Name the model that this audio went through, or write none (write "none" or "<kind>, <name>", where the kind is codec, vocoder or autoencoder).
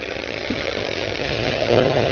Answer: vocoder, HiFi-GAN